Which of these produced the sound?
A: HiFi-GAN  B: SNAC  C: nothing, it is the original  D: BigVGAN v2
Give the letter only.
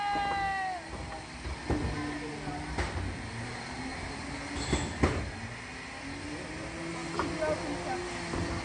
C